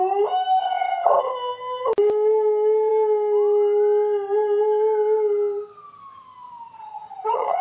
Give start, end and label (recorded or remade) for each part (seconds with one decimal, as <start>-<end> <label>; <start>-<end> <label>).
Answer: 0.0-0.6 recorded; 0.6-1.2 remade; 1.2-6.8 recorded; 6.8-7.6 remade